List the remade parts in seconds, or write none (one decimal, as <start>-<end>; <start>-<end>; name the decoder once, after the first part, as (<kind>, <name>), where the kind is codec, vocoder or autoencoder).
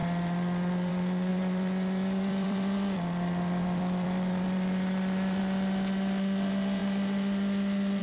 0.0-0.9 (vocoder, BigVGAN v2); 1.3-5.4